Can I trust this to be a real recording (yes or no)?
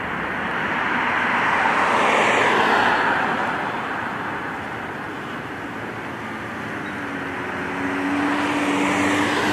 yes